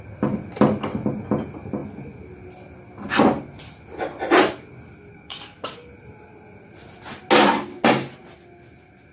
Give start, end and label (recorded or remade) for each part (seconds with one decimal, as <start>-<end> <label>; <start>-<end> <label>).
0.0-5.1 recorded; 5.1-5.9 remade; 5.9-9.1 recorded